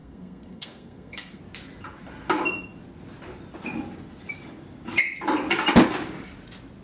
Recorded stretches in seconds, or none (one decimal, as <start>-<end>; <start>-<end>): 1.4-6.8